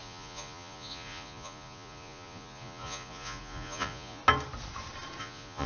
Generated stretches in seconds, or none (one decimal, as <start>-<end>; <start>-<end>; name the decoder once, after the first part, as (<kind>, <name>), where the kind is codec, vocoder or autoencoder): 0.0-4.2 (vocoder, Vocos); 5.2-5.7